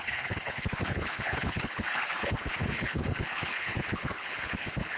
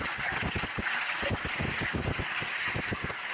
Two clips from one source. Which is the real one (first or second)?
second